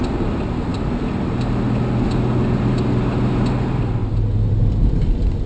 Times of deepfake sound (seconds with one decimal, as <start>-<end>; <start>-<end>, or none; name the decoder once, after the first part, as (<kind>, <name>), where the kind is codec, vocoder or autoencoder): none

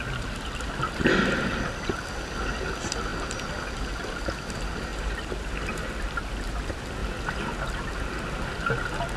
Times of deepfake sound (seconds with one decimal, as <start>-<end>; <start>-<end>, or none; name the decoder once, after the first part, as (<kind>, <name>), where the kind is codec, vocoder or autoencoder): 4.9-5.8 (vocoder, BigVGAN v2)

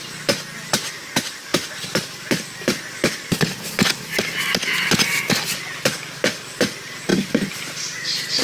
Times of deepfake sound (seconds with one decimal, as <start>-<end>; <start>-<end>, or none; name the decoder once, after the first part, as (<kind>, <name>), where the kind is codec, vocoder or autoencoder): 1.5-4.4 (vocoder, BigVGAN v2); 7.1-7.8